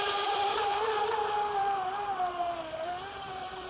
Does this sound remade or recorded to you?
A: remade